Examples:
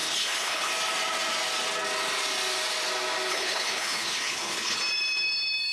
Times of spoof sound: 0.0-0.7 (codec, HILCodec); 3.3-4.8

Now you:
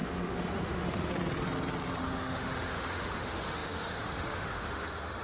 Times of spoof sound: 0.0-1.1 (autoencoder, DAC-VAE); 2.0-5.2

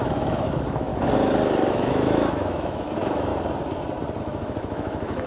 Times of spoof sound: 0.0-0.9 (autoencoder, DAC-VAE); 1.7-3.3; 4.2-5.3